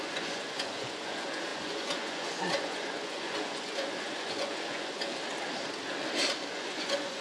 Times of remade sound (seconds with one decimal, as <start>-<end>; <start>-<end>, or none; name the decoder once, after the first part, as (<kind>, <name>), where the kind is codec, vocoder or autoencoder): 0.0-5.2 (vocoder, Vocos); 6.5-7.2